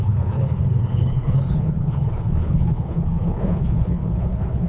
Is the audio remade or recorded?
remade